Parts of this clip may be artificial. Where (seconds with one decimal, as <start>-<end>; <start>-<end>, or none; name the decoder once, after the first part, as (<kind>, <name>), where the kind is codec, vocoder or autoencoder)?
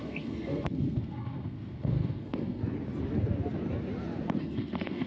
0.0-2.6 (codec, SNAC); 4.4-5.1